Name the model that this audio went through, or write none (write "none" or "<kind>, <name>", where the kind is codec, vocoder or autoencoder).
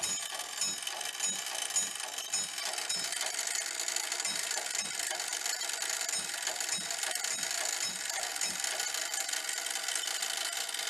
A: none